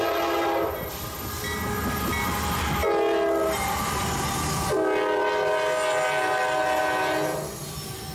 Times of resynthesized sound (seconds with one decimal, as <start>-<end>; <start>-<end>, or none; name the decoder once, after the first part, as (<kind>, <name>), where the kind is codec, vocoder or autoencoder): none